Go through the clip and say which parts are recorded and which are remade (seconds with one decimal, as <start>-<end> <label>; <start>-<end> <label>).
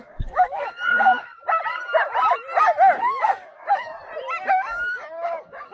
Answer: 0.0-1.3 remade; 1.3-3.0 recorded; 3.0-3.9 remade; 3.9-4.5 recorded; 4.5-5.7 remade